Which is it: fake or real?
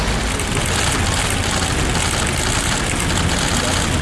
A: real